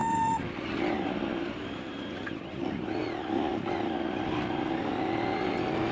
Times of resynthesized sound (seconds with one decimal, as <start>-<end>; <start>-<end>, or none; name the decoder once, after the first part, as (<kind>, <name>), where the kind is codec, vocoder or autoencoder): 1.3-2.6 (vocoder, BigVGAN v2)